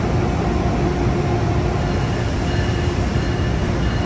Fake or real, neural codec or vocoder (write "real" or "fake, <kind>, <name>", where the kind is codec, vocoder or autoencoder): real